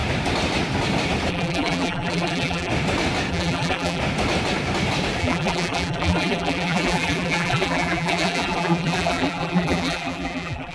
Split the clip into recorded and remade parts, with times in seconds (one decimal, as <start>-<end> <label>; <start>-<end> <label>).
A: 0.0-1.3 recorded; 1.3-2.7 remade; 2.7-3.3 recorded; 3.3-4.0 remade; 4.0-5.2 recorded; 5.2-10.7 remade